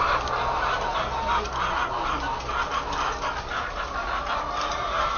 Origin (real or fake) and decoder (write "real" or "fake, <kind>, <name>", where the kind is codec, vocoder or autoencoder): real